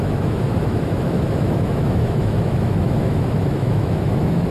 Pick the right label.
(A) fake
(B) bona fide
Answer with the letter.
A